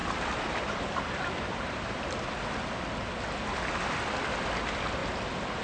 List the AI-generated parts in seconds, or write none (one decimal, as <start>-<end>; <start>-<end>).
0.0-2.0